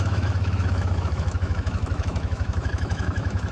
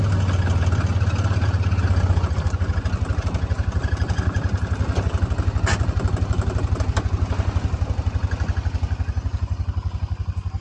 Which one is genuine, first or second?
second